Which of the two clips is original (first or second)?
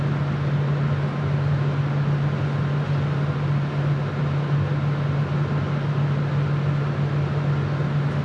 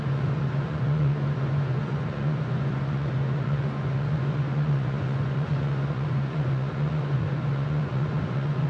first